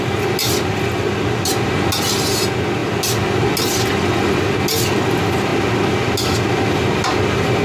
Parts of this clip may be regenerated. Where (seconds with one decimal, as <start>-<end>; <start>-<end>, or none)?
none